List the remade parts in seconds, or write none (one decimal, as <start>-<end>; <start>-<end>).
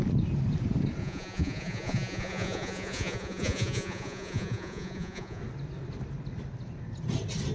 1.0-5.4